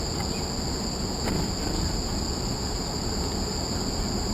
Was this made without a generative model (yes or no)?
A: yes